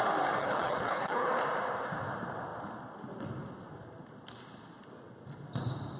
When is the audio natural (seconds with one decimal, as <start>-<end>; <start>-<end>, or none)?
0.0-0.4; 1.3-6.0